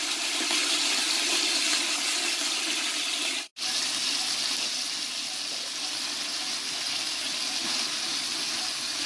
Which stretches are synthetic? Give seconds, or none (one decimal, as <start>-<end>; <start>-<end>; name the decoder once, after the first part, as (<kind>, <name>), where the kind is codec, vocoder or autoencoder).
none